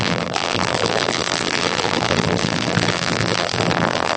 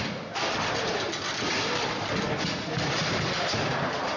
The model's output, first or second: first